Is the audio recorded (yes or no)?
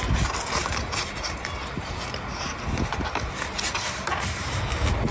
yes